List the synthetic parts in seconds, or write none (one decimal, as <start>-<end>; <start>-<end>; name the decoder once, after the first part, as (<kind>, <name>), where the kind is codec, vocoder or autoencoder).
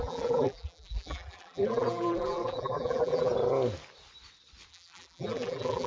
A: 0.0-3.3 (vocoder, BigVGAN v2); 4.7-5.9